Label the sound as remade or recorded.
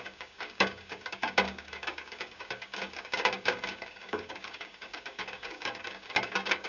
remade